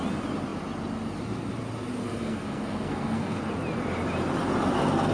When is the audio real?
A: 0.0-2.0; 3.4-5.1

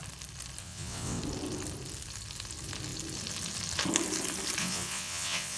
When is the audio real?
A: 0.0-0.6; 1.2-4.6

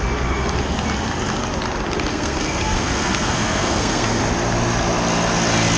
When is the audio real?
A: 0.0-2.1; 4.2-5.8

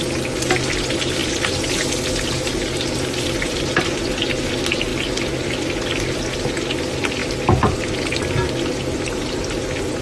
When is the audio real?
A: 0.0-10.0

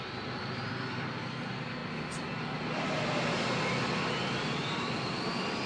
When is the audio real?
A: 1.8-2.5

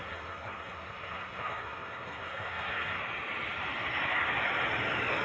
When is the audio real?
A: 3.0-5.2

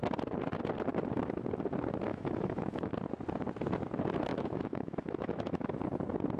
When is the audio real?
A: 0.0-2.1; 2.9-4.3; 5.7-6.4

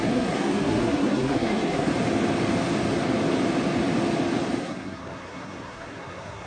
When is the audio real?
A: 1.9-4.6